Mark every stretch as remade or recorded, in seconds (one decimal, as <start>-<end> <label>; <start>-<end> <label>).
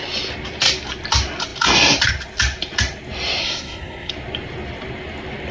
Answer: 0.0-3.4 recorded; 3.4-4.1 remade; 4.1-5.5 recorded